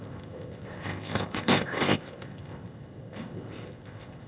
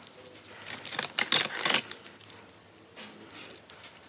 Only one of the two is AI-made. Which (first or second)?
first